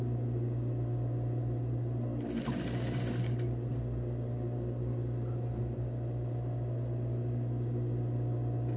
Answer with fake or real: real